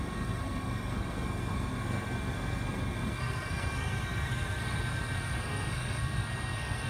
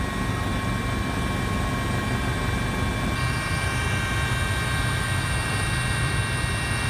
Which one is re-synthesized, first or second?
first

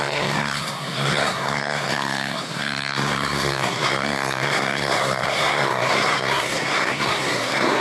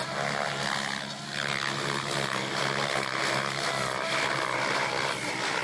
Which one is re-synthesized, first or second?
first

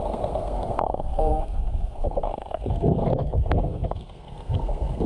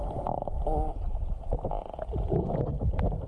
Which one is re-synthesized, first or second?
first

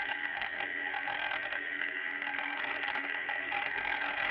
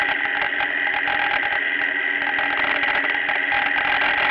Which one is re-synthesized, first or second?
first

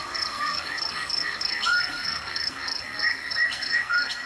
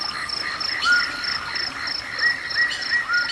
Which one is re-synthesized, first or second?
first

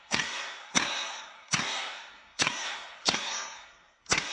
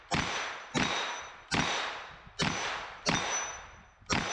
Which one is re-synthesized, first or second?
first